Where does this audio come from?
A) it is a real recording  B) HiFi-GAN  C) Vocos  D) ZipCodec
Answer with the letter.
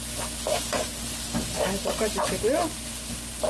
A